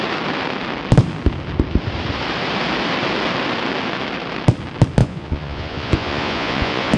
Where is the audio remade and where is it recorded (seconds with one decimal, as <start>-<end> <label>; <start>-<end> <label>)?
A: 0.0-5.0 recorded; 5.0-7.0 remade